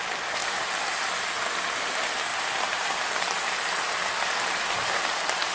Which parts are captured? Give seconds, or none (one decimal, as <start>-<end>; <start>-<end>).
0.0-0.4; 1.0-2.3